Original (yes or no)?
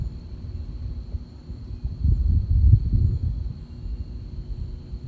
yes